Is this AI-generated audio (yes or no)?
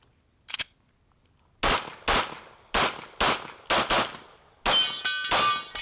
no